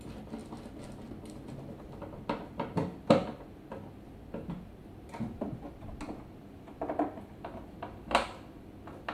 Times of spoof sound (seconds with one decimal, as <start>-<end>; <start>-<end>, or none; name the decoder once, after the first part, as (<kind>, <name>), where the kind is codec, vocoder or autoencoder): none